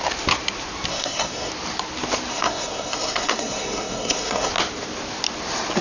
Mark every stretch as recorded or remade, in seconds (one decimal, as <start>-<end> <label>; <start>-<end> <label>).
0.0-0.9 recorded; 0.9-1.5 remade; 1.5-2.3 recorded; 2.3-4.5 remade; 4.5-5.8 recorded